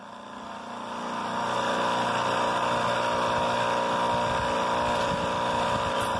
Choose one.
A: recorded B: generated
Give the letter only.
A